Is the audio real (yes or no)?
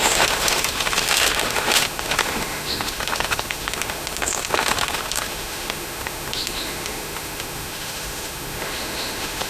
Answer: no